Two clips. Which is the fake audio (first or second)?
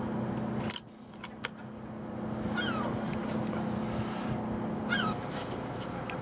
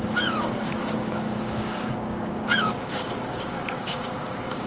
second